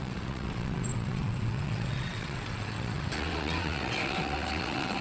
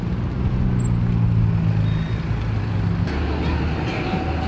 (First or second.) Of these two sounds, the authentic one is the second